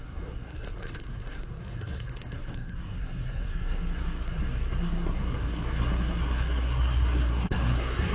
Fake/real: fake